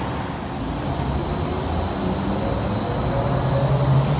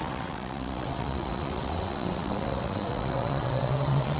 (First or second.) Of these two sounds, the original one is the first